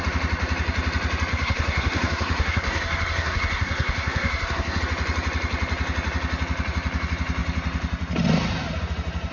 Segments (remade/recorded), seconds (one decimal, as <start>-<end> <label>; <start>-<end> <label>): 0.0-1.3 recorded; 1.3-4.8 remade; 4.8-9.3 recorded

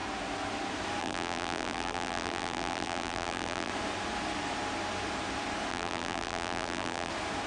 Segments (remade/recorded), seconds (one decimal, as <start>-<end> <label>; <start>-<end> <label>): 0.0-1.0 recorded; 1.0-3.7 remade; 3.7-5.7 recorded; 5.7-7.1 remade; 7.1-7.5 recorded

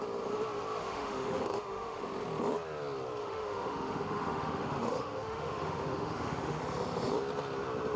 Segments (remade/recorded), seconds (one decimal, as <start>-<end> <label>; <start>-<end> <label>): 0.0-0.8 recorded; 0.8-2.0 remade; 2.0-3.2 recorded; 3.2-6.6 remade; 6.6-8.0 recorded

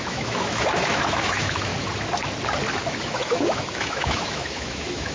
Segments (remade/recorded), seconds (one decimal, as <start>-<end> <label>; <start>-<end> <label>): 0.0-1.7 remade; 1.7-2.7 recorded; 2.7-5.1 remade

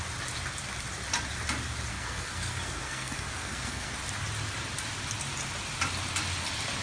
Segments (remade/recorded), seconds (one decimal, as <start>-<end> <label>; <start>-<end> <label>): 0.0-1.9 recorded; 1.9-3.9 remade; 3.9-6.8 recorded

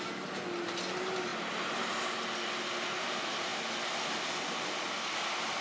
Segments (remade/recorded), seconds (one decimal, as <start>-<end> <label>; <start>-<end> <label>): 0.0-5.6 recorded

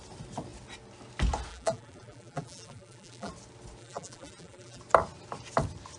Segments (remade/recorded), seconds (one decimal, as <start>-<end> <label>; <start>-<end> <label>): 0.0-1.5 recorded; 1.5-3.3 remade; 3.3-3.8 recorded; 3.8-4.8 remade; 4.8-6.0 recorded